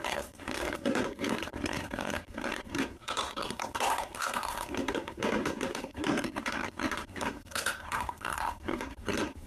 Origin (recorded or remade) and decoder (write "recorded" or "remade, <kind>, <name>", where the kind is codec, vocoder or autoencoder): remade, codec, SNAC